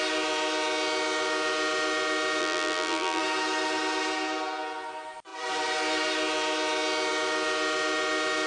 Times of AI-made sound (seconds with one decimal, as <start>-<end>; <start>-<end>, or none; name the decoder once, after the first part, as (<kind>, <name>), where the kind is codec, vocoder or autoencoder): 2.4-3.2 (vocoder, BigVGAN v2)